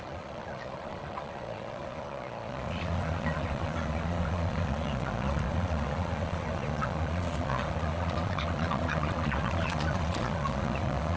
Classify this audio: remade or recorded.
remade